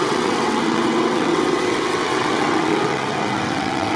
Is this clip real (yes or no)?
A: no